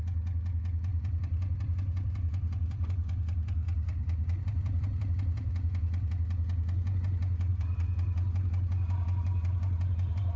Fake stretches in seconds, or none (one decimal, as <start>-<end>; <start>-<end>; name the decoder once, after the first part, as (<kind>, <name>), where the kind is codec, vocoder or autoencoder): 0.9-6.1 (vocoder, BigVGAN v2); 7.5-10.4